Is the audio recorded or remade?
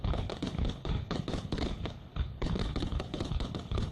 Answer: remade